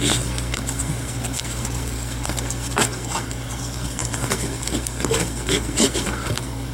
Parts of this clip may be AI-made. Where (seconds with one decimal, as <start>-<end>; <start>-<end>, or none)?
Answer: 0.0-6.7